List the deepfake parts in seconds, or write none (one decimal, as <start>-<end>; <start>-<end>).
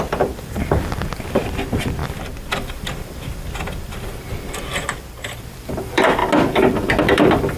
0.0-6.2; 7.0-7.6